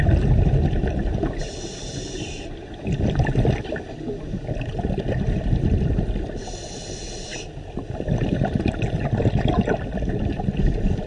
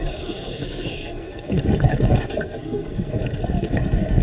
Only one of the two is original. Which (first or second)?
first